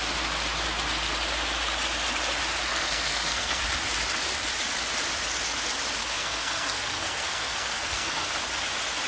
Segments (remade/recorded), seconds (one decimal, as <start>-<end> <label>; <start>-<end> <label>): 0.0-2.7 recorded; 2.7-3.6 remade; 3.6-6.0 recorded; 6.0-8.3 remade; 8.3-9.1 recorded